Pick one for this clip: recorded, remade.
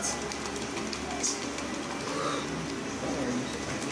recorded